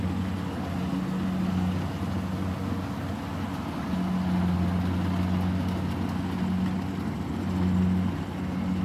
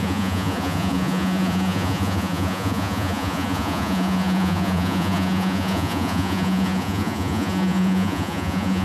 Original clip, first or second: first